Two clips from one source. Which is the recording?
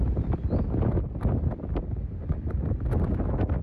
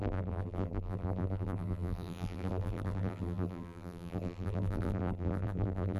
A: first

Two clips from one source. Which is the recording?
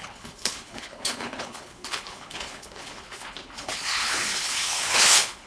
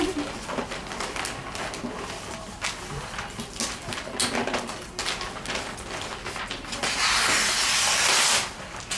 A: second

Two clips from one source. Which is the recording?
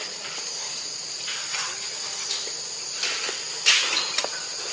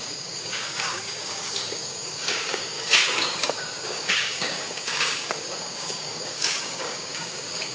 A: first